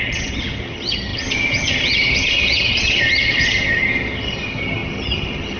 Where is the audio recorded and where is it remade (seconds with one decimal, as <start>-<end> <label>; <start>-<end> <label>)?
0.0-5.6 remade